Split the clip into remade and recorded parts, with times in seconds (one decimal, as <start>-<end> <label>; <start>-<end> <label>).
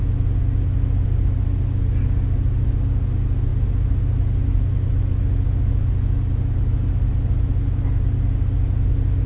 0.0-9.3 recorded